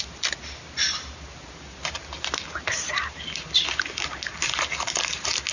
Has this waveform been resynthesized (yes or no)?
no